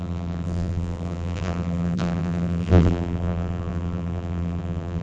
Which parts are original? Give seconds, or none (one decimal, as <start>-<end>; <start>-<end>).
none

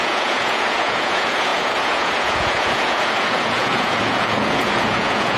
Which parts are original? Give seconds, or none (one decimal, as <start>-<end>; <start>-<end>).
none

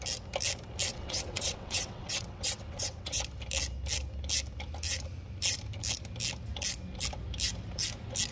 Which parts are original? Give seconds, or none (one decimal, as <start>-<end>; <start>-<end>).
0.0-0.9; 3.2-8.3

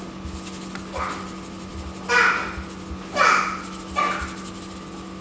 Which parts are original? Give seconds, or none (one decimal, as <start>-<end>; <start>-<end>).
0.0-5.2

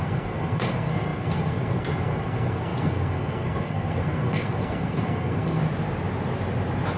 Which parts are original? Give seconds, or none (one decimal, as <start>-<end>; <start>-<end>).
5.6-7.0

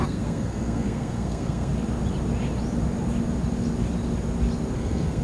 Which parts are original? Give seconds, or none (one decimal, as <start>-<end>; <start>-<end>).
1.7-4.8

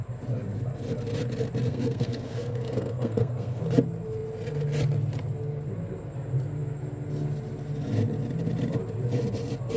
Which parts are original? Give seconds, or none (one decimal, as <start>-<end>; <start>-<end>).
0.0-1.7; 3.6-9.8

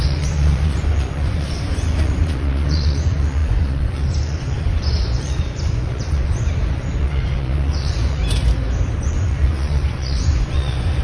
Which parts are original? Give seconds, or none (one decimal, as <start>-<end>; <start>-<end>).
8.2-9.0